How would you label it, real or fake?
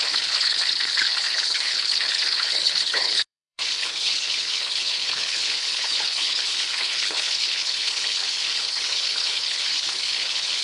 fake